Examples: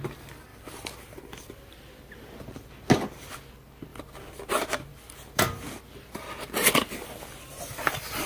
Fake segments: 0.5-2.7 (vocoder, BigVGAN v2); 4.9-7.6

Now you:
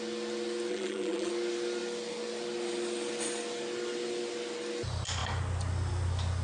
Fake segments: 0.7-1.3 (vocoder, BigVGAN v2)

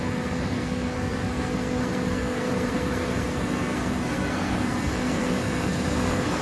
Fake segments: 0.0-6.4 (codec, SNAC)

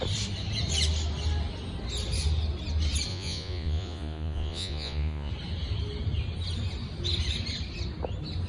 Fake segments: 3.1-5.3 (vocoder, Vocos)